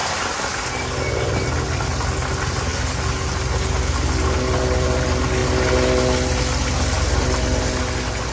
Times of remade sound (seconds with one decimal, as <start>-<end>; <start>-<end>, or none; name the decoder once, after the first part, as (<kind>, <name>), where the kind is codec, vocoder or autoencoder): none